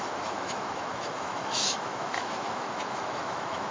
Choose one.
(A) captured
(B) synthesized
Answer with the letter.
B